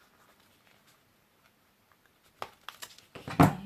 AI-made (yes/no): no